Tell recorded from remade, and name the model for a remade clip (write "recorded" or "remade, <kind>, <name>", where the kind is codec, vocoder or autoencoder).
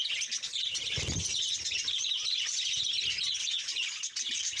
recorded